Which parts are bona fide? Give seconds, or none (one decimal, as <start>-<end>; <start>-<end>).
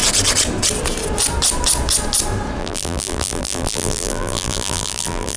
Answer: 0.0-2.6